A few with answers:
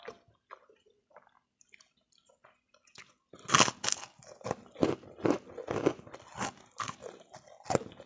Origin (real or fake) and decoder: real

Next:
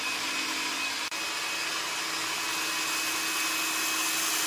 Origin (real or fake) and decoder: real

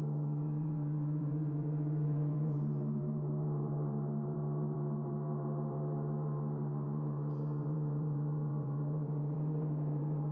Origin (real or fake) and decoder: fake, vocoder, BigVGAN v2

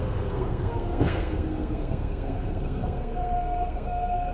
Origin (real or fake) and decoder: fake, codec, SNAC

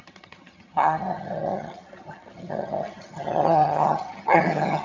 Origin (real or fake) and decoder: fake, vocoder, HiFi-GAN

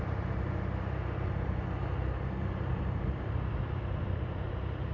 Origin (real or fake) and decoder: fake, vocoder, BigVGAN v2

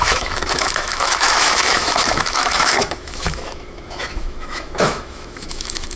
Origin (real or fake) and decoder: fake, autoencoder, DAC-VAE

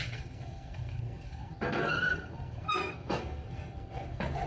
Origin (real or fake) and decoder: fake, codec, SNAC